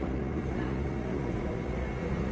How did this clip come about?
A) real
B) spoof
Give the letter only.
B